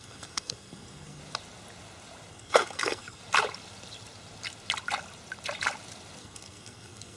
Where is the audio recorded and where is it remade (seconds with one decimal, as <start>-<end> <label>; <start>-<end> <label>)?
0.0-1.2 remade; 1.2-2.3 recorded; 2.3-3.2 remade; 3.2-6.2 recorded; 6.2-7.2 remade